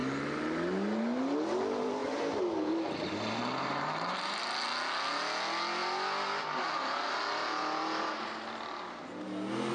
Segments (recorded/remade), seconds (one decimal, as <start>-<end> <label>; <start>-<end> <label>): 0.0-2.0 recorded; 2.0-4.4 remade; 4.4-9.7 recorded